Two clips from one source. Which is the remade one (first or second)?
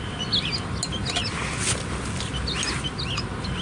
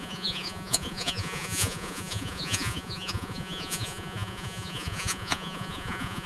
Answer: second